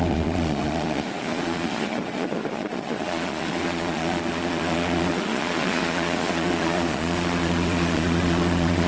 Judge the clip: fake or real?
fake